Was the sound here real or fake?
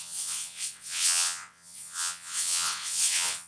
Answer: fake